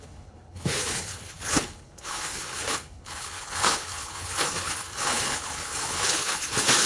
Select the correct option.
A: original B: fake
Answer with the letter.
B